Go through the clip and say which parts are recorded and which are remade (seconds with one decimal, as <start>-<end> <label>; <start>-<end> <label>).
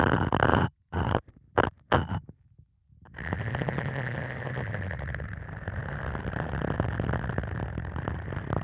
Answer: 0.0-0.5 recorded; 0.5-1.3 remade; 1.3-8.6 recorded